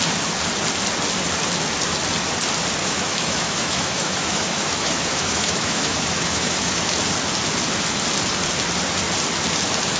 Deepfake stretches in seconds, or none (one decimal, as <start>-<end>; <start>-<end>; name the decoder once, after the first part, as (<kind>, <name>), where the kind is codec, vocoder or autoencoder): 2.8-6.8 (autoencoder, DAC-VAE)